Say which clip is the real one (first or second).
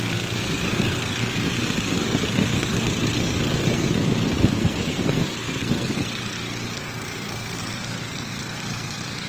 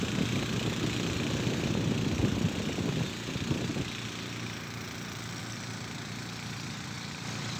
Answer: second